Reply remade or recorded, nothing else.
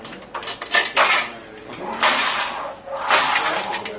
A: recorded